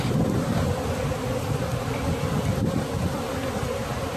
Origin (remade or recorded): recorded